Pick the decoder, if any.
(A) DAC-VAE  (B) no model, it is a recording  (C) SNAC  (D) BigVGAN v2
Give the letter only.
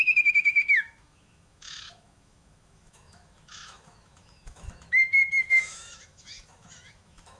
A